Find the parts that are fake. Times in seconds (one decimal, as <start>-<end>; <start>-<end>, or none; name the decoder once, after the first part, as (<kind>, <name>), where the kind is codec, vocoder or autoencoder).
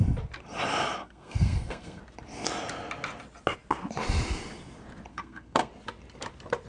1.0-2.0 (codec, SNAC); 5.1-5.7